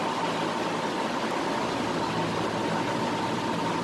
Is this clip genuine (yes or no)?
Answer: yes